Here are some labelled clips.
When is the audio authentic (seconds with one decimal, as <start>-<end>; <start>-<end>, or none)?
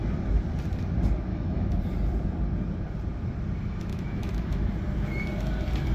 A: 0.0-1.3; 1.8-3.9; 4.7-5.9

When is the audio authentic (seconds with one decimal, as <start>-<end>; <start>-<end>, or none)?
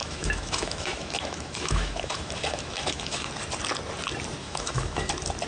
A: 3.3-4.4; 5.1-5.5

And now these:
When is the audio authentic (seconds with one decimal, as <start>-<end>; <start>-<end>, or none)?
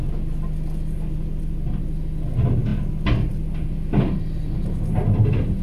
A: 0.0-5.6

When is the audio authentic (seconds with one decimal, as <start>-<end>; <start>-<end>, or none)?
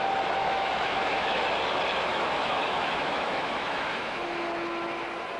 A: 0.0-0.4; 1.4-2.1; 4.2-5.4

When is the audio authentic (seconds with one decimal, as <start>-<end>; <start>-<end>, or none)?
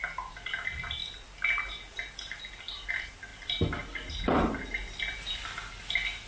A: 0.0-6.3